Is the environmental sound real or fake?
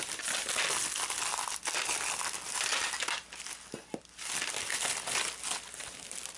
real